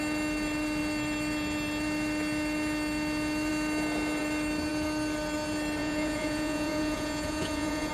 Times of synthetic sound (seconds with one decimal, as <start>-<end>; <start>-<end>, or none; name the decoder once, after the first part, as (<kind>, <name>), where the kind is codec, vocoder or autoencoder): 5.8-7.9 (vocoder, Vocos)